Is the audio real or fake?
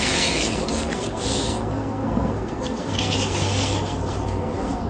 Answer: fake